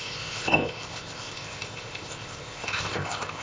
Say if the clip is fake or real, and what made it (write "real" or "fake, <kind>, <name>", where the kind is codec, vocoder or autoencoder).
fake, codec, ZipCodec